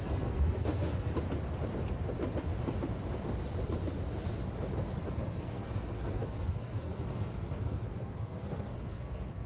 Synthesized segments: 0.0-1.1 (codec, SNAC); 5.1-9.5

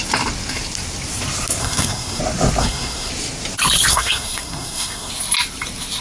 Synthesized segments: 1.6-2.2 (codec, SNAC); 2.6-3.1; 3.9-5.1

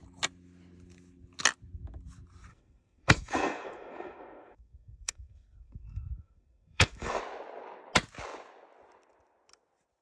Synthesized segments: 2.5-7.2 (codec, SNAC)

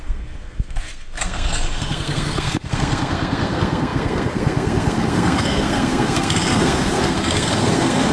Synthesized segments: 0.0-8.1 (codec, SNAC)

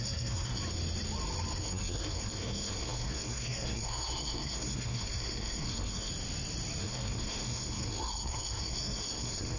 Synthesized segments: 0.0-0.6 (codec, SNAC); 1.6-6.1; 6.8-9.6